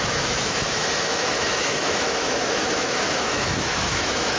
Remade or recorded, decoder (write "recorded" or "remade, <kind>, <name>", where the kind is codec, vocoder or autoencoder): remade, autoencoder, DAC-VAE